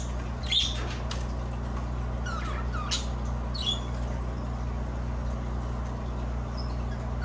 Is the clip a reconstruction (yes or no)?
no